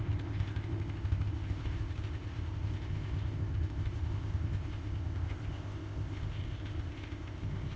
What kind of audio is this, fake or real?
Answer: fake